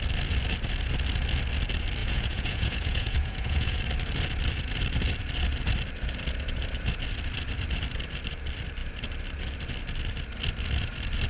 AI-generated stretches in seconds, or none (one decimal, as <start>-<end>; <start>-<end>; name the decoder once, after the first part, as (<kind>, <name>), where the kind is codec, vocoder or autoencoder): 2.0-3.8 (vocoder, Vocos)